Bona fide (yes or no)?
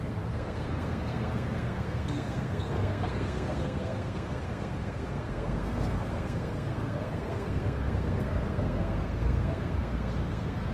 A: no